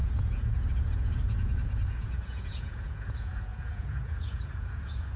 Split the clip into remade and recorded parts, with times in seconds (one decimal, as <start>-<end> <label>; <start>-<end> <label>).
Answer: 0.0-5.2 remade